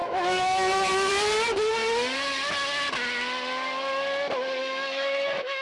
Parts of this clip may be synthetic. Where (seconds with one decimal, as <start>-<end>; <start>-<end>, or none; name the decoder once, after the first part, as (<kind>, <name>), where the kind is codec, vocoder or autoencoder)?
0.0-1.1 (autoencoder, DAC-VAE); 4.6-5.6